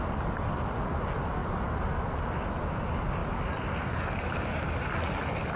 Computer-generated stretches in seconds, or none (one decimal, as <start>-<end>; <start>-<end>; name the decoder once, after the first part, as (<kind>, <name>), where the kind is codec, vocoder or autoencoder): none